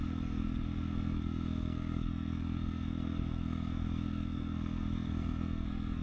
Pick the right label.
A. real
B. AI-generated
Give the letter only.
B